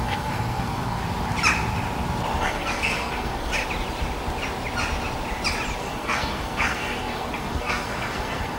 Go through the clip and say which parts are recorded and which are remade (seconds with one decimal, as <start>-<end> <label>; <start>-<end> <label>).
0.0-1.0 remade; 1.0-2.4 recorded; 2.4-3.5 remade; 3.5-5.8 recorded; 5.8-8.6 remade